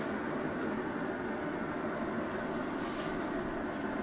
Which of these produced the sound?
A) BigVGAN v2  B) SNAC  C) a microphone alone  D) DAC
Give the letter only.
C